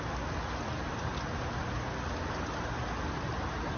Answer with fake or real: real